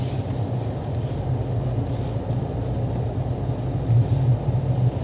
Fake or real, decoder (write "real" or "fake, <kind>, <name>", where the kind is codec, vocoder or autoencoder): real